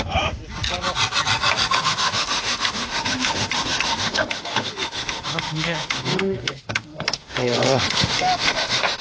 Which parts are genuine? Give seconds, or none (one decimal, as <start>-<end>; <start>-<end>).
0.4-1.8